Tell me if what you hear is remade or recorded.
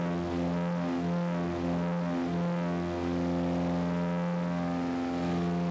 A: recorded